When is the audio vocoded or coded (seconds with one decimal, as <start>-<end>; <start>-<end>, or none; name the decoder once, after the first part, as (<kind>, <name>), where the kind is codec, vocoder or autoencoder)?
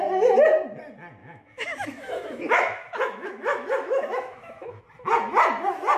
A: 1.2-4.8 (autoencoder, DAC-VAE)